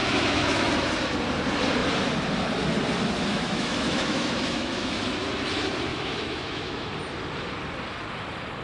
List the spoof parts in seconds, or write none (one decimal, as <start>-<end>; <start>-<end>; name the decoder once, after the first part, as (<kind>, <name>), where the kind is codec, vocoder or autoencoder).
0.0-0.7 (autoencoder, DAC-VAE); 3.3-5.0; 5.9-6.9